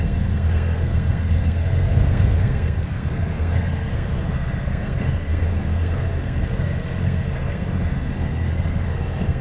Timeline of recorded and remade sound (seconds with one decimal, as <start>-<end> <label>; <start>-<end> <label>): 0.0-9.4 remade